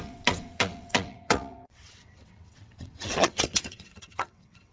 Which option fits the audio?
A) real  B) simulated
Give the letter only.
B